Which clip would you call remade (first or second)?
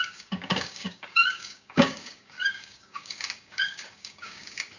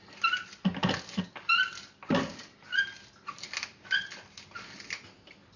first